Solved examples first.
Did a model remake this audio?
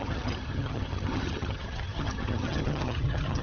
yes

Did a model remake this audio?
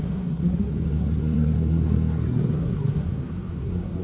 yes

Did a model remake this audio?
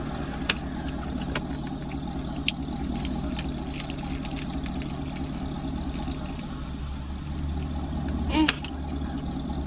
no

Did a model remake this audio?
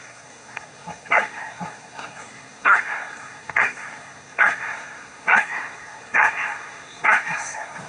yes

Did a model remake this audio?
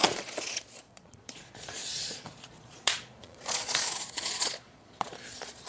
yes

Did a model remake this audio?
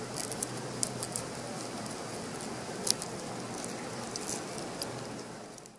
no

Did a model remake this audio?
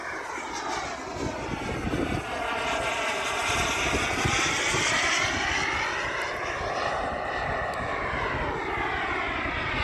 no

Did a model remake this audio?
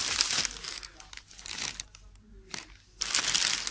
no